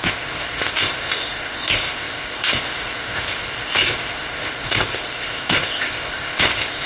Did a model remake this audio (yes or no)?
yes